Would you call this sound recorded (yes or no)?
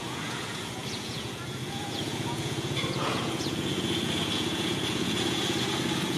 no